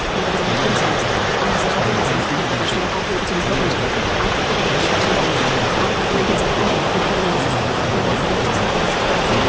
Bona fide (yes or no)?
no